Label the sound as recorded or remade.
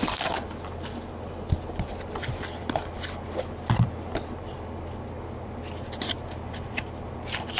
recorded